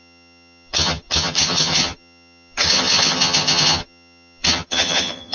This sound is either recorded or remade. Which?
remade